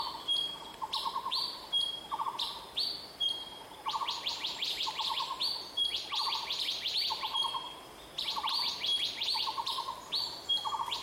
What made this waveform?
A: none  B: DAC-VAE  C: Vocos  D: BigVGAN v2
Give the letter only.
D